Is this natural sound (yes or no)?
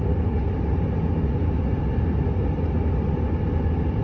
yes